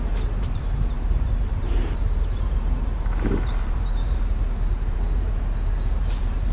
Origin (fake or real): fake